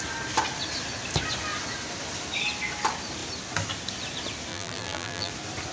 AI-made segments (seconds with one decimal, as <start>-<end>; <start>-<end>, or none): 4.5-5.3